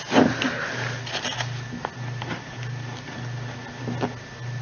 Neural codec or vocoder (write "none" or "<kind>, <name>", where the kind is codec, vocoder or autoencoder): none